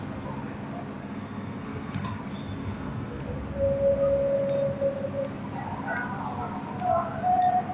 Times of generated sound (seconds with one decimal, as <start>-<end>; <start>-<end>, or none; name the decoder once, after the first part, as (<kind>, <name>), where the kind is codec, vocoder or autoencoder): 1.0-2.2 (codec, SNAC); 2.6-3.2